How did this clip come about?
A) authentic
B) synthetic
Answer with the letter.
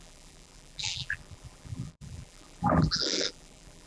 B